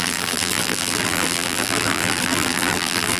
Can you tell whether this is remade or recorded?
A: remade